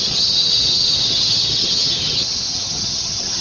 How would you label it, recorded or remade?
remade